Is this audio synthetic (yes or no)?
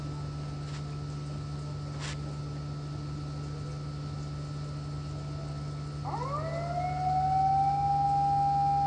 no